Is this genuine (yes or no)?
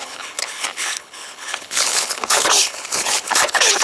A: no